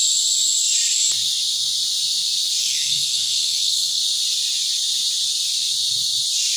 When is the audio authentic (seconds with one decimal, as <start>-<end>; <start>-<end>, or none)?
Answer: 0.0-2.6; 4.0-6.6